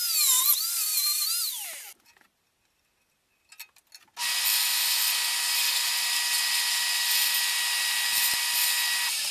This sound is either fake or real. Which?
real